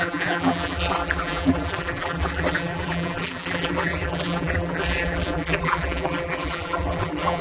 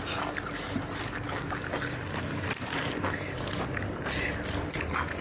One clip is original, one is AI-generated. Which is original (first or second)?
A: second